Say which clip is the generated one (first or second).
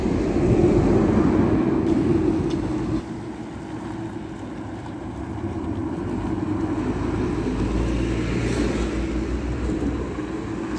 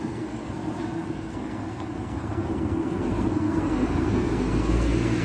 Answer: second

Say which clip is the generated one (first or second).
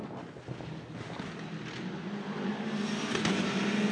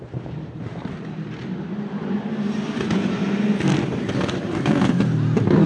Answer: second